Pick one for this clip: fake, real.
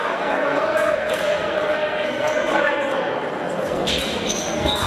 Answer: fake